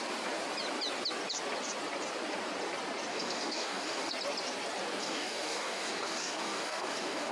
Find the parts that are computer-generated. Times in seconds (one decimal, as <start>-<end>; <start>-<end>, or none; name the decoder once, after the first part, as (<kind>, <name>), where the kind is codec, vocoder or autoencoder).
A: 3.1-4.1 (codec, DAC); 5.0-7.3